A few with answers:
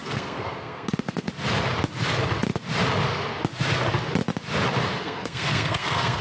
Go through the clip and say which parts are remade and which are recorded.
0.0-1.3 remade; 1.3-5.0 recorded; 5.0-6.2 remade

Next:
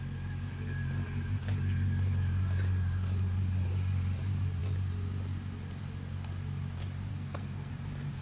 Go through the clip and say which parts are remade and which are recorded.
0.0-7.1 recorded; 7.1-7.7 remade; 7.7-8.2 recorded

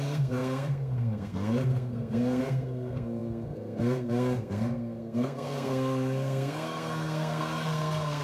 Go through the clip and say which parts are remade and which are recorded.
0.0-8.2 remade

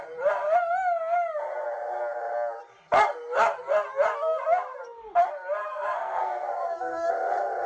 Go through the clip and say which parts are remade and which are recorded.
0.0-5.6 recorded; 5.6-7.1 remade; 7.1-7.7 recorded

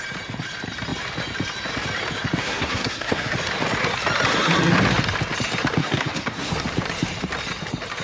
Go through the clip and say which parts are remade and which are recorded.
0.0-2.4 recorded; 2.4-3.3 remade; 3.3-5.8 recorded; 5.8-6.5 remade; 6.5-8.0 recorded